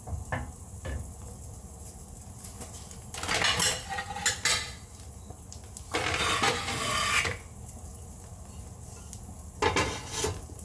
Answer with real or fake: real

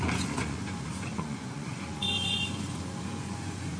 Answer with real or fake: fake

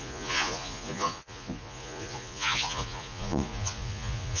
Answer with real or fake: fake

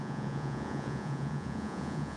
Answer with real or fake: fake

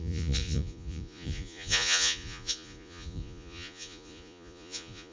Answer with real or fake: fake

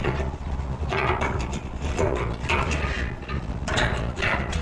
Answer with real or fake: fake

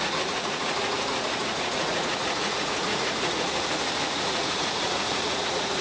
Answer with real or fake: fake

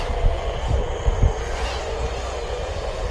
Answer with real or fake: fake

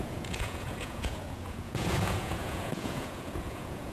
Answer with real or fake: fake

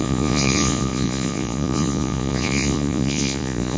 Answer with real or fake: fake